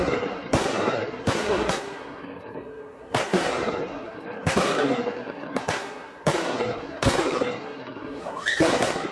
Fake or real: fake